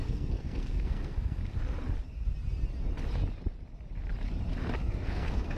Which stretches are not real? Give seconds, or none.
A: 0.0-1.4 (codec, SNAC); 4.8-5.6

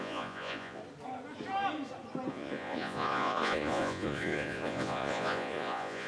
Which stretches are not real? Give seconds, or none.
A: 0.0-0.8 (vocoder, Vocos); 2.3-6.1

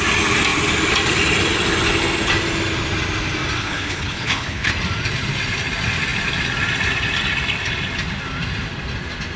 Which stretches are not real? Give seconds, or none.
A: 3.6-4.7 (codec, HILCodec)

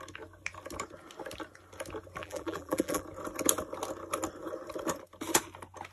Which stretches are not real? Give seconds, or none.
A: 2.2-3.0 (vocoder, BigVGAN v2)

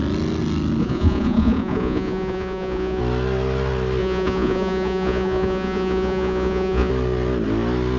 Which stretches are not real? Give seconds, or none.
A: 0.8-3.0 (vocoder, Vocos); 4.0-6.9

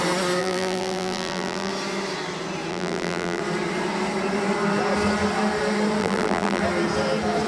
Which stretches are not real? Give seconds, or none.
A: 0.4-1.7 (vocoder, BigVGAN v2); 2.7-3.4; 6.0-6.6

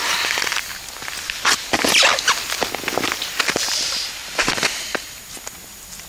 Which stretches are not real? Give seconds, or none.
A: 0.0-0.6 (vocoder, BigVGAN v2); 2.6-4.8

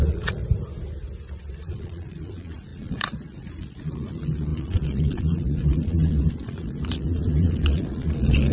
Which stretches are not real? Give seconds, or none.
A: 0.0-0.4 (vocoder, Vocos); 1.5-8.5